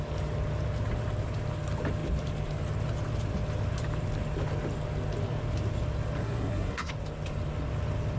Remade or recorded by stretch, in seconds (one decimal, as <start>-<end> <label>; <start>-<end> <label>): 0.0-6.2 recorded; 6.2-6.9 remade; 6.9-8.2 recorded